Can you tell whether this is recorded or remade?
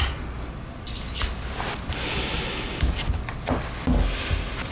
recorded